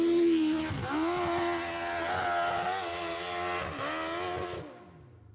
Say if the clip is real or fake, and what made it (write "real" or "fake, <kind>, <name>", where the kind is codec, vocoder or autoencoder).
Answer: real